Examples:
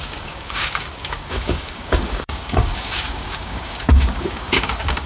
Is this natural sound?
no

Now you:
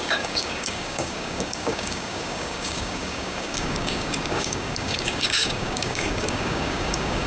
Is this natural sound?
no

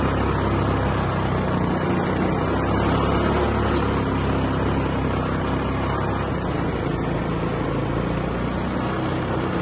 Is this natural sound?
yes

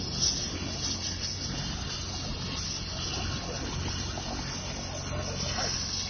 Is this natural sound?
yes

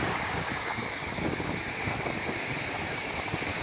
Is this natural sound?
no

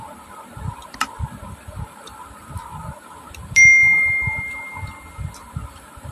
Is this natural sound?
yes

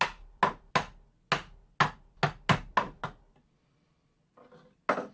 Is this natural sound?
yes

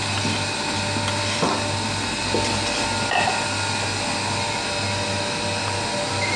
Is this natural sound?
yes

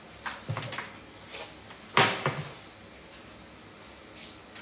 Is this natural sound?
yes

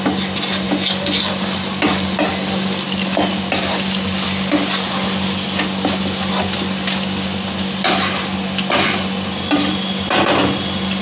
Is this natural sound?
yes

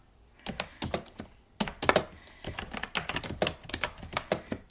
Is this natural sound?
yes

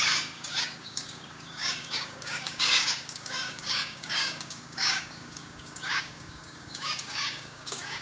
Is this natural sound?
no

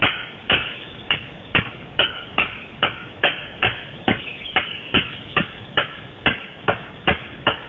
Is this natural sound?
no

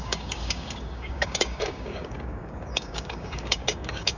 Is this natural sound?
no